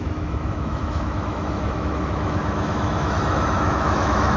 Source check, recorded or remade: remade